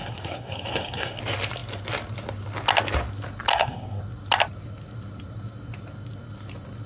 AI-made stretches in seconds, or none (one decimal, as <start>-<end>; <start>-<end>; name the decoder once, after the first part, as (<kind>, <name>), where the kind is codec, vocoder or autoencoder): 0.0-1.2 (codec, SNAC); 3.5-4.0